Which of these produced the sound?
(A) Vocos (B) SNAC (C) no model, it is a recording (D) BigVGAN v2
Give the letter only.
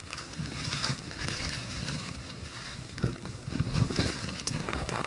B